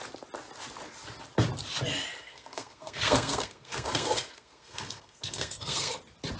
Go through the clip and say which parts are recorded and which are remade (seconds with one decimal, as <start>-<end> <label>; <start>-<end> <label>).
0.0-2.2 recorded; 2.2-6.0 remade; 6.0-6.4 recorded